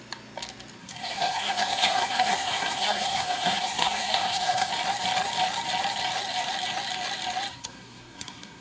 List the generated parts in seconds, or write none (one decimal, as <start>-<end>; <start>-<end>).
0.8-4.7; 7.5-8.6

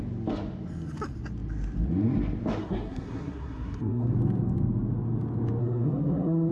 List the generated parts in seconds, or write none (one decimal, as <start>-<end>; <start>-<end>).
2.6-4.1; 5.6-6.5

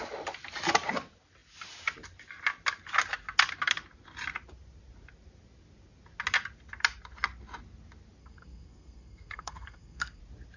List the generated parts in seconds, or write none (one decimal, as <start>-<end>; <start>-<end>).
8.2-10.2

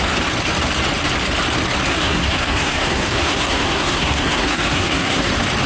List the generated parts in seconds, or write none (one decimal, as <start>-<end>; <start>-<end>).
1.9-5.3

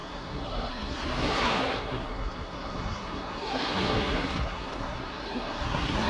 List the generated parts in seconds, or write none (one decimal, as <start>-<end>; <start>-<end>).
0.0-6.1

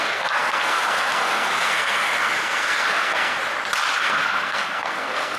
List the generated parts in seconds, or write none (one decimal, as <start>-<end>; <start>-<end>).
0.0-3.4; 4.0-5.4